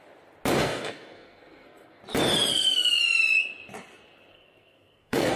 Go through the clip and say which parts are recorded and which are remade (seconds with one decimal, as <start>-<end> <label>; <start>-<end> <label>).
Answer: 0.0-0.6 recorded; 0.6-2.0 remade; 2.0-2.5 recorded; 2.5-3.0 remade; 3.0-4.3 recorded; 4.3-5.4 remade